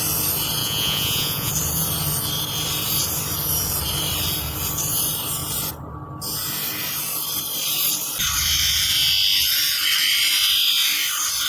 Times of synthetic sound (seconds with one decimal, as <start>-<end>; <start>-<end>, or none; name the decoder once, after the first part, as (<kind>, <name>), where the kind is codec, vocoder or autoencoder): 0.6-1.5 (vocoder, Vocos)